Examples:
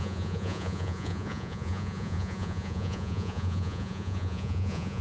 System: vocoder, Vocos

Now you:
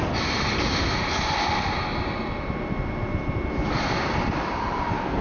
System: none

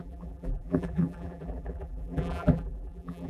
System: vocoder, BigVGAN v2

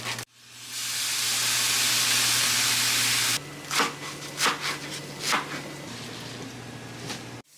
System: none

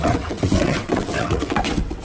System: vocoder, WaveNeXt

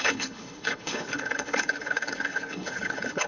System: codec, HILCodec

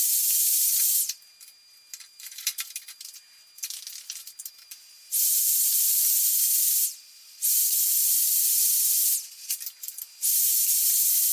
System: none